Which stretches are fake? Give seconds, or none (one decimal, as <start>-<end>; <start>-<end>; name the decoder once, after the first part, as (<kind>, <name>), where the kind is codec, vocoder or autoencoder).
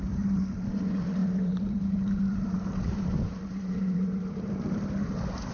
1.2-4.5 (vocoder, BigVGAN v2)